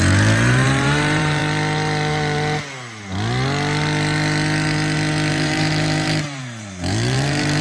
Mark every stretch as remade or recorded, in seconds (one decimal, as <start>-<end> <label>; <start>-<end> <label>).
0.0-1.4 remade; 1.4-5.3 recorded; 5.3-7.6 remade